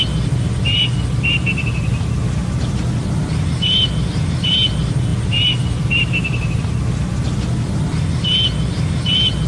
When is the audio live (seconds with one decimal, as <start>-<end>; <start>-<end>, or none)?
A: 0.0-5.1; 6.6-9.5

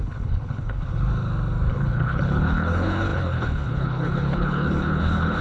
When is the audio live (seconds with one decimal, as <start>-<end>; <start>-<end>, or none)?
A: 1.1-1.7

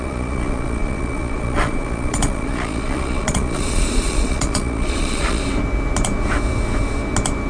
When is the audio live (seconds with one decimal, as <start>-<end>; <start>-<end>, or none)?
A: 5.4-7.5

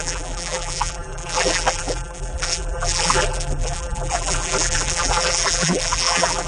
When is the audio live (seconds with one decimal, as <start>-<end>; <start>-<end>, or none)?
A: none

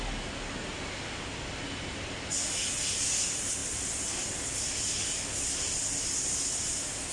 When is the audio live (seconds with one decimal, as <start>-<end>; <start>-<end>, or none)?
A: 0.0-7.1

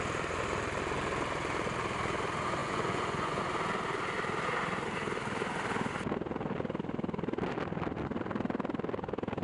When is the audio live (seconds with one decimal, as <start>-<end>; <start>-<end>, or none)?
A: 0.0-2.6; 3.4-9.4